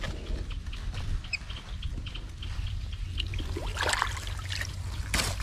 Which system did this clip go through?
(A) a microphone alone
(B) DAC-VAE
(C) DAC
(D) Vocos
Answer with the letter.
A